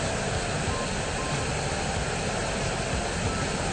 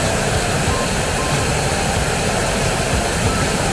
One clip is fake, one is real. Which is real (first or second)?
first